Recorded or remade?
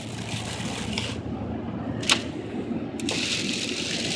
recorded